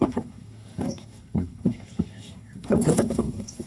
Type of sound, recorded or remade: remade